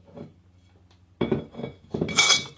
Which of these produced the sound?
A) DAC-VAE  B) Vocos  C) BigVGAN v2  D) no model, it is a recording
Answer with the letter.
D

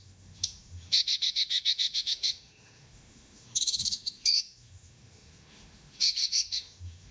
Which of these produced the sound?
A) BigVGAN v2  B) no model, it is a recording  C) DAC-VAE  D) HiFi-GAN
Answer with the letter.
C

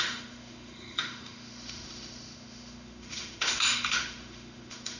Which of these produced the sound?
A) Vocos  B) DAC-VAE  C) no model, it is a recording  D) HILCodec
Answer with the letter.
B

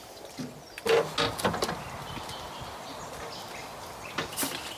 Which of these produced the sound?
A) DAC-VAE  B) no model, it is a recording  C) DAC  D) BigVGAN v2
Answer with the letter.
B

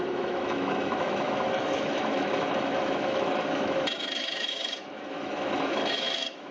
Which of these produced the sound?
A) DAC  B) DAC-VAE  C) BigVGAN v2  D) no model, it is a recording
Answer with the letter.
B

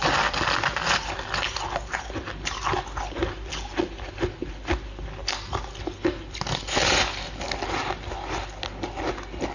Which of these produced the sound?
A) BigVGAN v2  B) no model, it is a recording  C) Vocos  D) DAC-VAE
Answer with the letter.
B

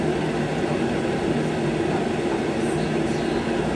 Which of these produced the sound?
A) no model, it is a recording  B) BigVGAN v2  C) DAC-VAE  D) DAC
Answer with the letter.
A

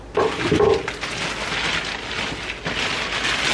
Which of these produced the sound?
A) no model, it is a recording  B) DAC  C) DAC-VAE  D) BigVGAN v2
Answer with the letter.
A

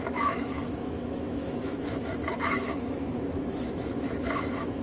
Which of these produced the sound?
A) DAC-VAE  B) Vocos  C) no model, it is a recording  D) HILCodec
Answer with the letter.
A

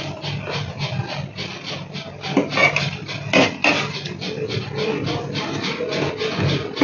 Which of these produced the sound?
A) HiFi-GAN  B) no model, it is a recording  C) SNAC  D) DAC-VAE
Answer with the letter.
B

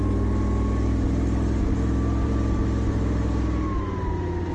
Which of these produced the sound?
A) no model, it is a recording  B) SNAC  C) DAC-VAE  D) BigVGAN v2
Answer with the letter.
A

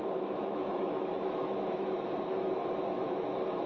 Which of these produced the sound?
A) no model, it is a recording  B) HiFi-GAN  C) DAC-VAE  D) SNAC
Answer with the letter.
C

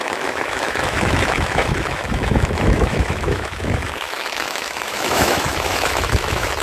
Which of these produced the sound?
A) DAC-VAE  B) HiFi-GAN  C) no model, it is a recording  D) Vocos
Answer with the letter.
A